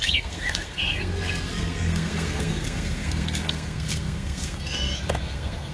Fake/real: fake